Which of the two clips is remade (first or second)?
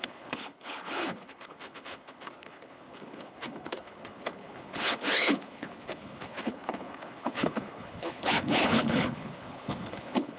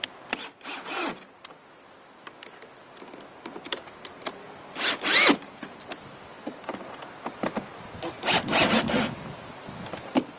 first